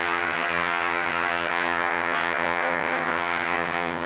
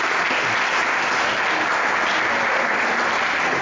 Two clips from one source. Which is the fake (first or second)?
first